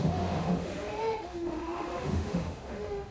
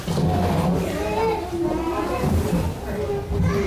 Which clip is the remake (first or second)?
first